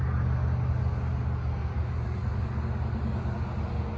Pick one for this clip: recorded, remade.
recorded